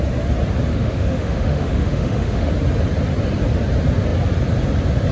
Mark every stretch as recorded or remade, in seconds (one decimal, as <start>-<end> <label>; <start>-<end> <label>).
0.0-0.7 recorded; 0.7-2.5 remade; 2.5-5.1 recorded